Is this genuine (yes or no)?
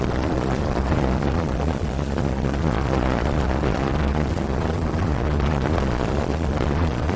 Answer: no